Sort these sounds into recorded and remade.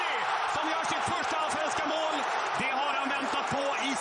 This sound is remade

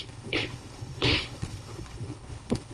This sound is remade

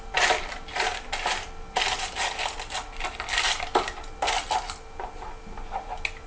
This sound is recorded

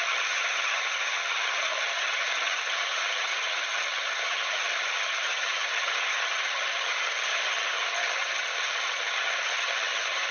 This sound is remade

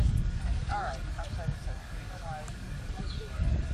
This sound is remade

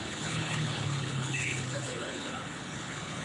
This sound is remade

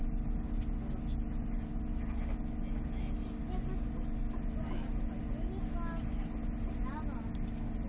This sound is recorded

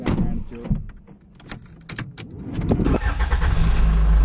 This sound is recorded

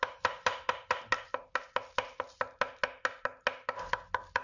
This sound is recorded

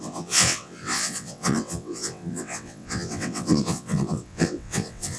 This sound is remade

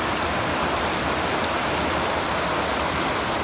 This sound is recorded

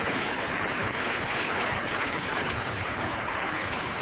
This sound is remade